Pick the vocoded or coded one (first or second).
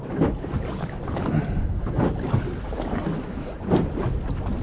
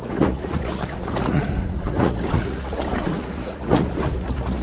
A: second